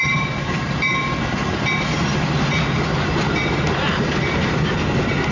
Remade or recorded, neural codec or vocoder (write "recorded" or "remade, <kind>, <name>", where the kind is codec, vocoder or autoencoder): recorded